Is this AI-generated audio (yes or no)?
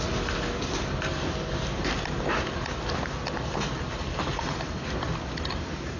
no